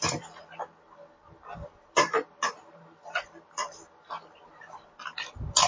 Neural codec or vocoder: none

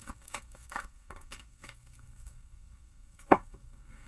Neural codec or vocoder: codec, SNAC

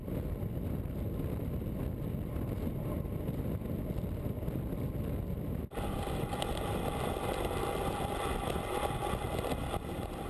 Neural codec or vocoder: none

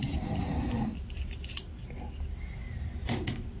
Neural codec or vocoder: none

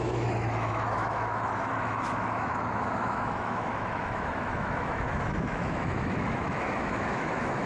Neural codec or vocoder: autoencoder, DAC-VAE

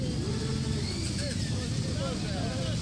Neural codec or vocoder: none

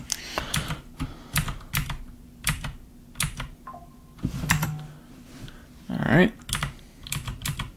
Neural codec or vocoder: vocoder, BigVGAN v2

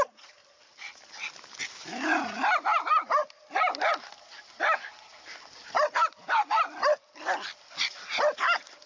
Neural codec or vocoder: none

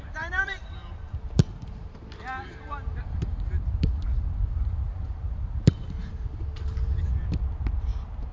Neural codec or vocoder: vocoder, BigVGAN v2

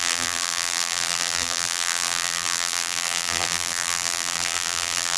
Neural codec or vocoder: vocoder, BigVGAN v2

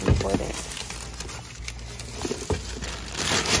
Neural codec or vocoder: none